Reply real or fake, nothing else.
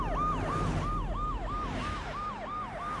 real